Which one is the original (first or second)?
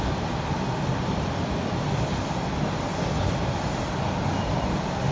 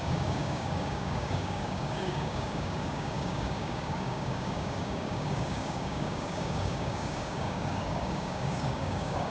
first